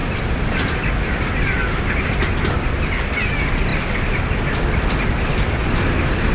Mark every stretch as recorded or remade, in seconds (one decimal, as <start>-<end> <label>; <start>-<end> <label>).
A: 0.0-6.3 recorded